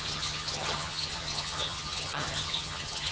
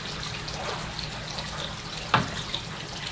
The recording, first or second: second